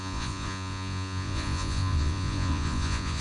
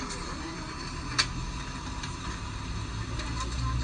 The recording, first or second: second